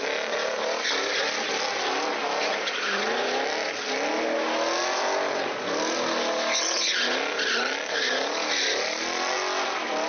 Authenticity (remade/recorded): recorded